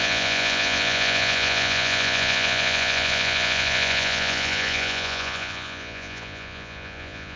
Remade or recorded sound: remade